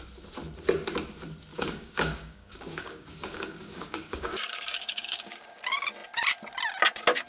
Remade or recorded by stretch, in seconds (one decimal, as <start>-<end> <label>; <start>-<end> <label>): 0.0-1.5 recorded; 1.5-5.6 remade; 5.6-7.3 recorded